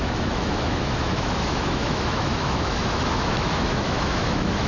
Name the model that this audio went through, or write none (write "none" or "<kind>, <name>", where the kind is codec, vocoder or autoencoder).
autoencoder, DAC-VAE